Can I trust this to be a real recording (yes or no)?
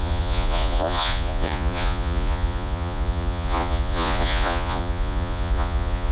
no